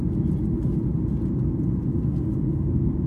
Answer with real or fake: real